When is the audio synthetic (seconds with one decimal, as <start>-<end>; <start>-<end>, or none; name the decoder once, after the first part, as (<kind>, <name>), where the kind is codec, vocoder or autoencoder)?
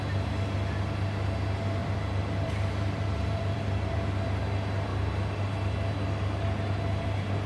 1.8-4.2 (vocoder, BigVGAN v2)